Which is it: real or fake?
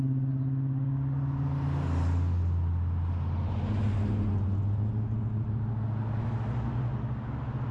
real